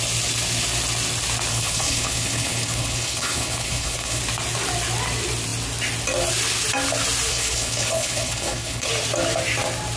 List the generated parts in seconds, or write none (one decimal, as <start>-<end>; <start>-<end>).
1.5-4.2; 7.3-8.9